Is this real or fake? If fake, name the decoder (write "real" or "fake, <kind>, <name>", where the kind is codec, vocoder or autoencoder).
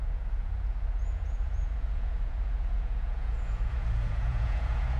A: fake, vocoder, Vocos